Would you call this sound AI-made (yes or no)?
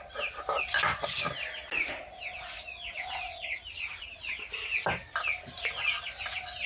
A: no